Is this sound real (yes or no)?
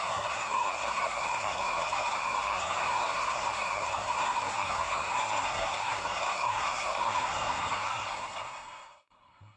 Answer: no